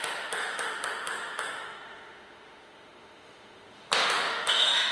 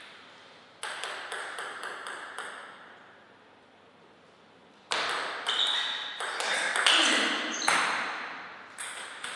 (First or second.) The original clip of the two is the second